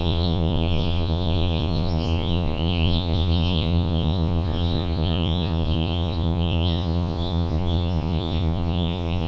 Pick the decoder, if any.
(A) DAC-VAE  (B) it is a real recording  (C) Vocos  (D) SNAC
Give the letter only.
C